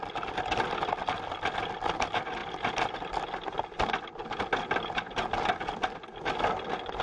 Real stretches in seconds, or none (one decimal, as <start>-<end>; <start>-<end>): 0.0-7.0